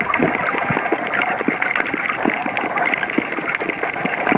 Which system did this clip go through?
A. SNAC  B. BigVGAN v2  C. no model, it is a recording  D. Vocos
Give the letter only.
C